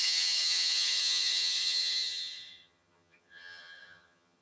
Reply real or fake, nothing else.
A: fake